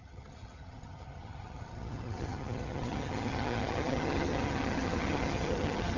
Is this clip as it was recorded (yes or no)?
no